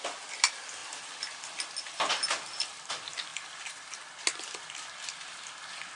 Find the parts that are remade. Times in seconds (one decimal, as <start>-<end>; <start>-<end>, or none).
none